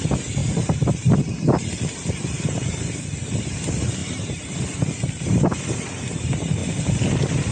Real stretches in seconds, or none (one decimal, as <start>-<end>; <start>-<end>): 0.0-0.4; 3.0-4.0; 4.6-7.5